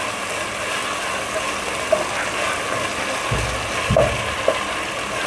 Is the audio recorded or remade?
recorded